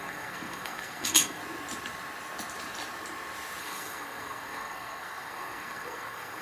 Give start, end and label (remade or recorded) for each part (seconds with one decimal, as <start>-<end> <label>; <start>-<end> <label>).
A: 0.0-1.4 remade; 1.4-3.6 recorded; 3.6-6.4 remade